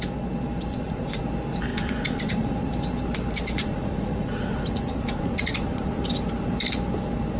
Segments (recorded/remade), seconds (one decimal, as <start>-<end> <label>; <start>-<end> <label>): 0.0-0.7 recorded; 0.7-1.2 remade; 1.2-1.7 recorded; 1.7-2.7 remade; 2.7-3.6 recorded; 3.6-6.0 remade; 6.0-7.4 recorded